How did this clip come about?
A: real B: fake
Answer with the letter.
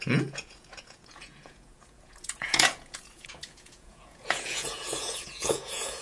B